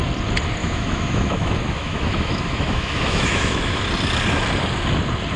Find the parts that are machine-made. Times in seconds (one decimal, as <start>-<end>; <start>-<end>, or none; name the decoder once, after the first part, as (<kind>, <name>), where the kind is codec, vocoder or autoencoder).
0.6-3.8 (autoencoder, DAC-VAE)